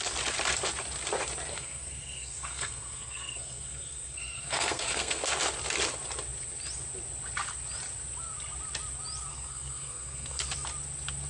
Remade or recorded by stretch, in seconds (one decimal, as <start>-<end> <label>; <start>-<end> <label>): 0.0-1.5 recorded; 1.5-5.2 remade; 5.2-9.3 recorded; 9.3-10.4 remade; 10.4-11.3 recorded